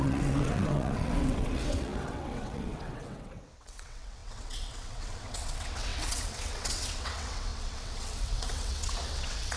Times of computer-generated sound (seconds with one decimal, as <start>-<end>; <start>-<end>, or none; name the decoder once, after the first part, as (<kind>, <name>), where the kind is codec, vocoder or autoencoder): 0.0-9.6 (vocoder, WaveNeXt)